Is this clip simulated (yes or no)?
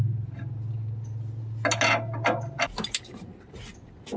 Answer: no